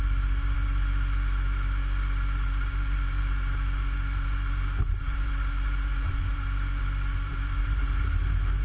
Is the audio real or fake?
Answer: fake